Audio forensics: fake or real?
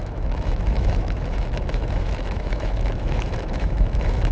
fake